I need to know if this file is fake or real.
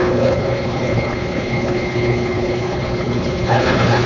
fake